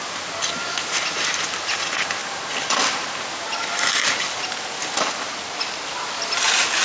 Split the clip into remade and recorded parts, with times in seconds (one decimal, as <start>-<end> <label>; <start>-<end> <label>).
0.0-6.8 recorded